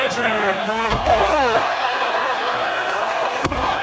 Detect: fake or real fake